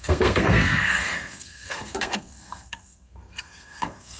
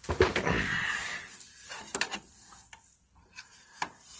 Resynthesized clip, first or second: first